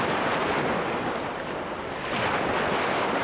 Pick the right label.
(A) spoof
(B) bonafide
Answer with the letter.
B